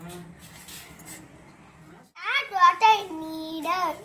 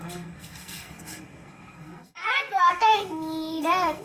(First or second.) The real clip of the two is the first